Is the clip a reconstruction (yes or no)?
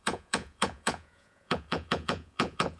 yes